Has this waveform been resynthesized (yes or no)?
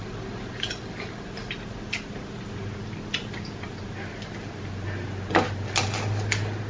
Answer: no